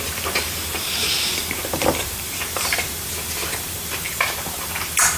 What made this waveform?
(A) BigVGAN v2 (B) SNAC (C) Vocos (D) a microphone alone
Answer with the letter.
A